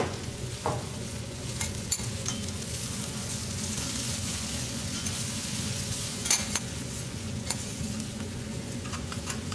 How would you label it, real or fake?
fake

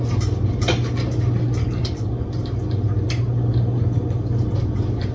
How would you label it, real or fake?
real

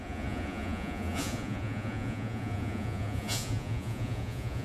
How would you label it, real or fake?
fake